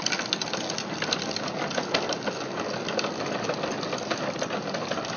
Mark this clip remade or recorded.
recorded